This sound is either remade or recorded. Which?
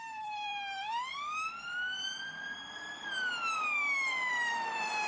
remade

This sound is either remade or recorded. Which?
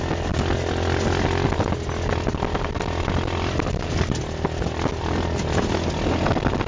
recorded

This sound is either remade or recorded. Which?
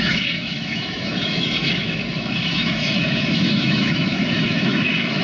remade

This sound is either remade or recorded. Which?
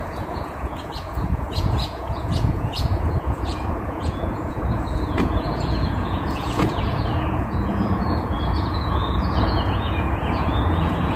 remade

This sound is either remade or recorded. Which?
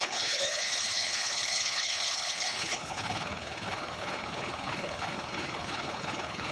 remade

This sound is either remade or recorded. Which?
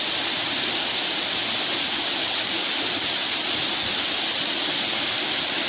recorded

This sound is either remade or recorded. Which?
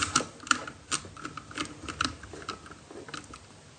recorded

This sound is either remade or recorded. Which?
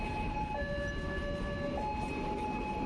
recorded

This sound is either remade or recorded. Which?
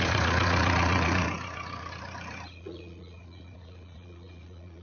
remade